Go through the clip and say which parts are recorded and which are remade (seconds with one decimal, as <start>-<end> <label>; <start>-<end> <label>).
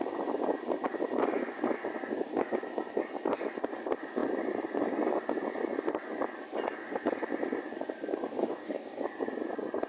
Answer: 0.0-8.4 recorded; 8.4-9.0 remade; 9.0-9.9 recorded